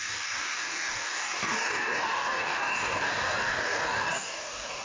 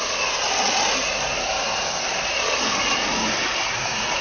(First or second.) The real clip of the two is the second